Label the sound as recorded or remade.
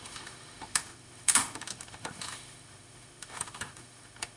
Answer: remade